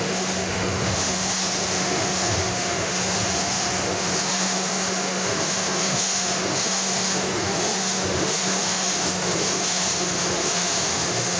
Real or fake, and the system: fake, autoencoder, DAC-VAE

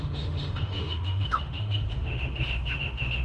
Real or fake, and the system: fake, autoencoder, DAC-VAE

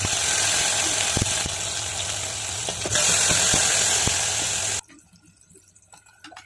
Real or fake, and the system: real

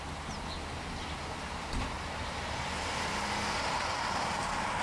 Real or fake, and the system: real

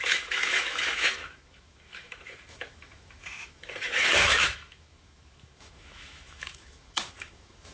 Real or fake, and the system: fake, autoencoder, DAC-VAE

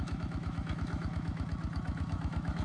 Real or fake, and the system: fake, autoencoder, DAC-VAE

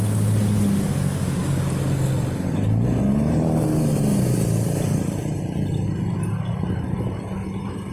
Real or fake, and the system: real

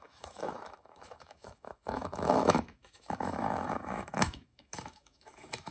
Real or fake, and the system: fake, autoencoder, DAC-VAE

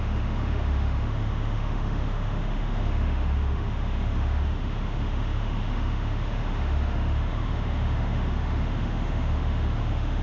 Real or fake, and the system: fake, autoencoder, DAC-VAE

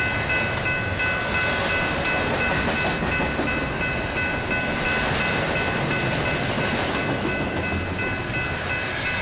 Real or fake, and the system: real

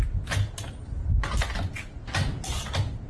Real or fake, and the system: real